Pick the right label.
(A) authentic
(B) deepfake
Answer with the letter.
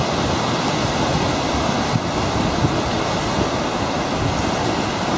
A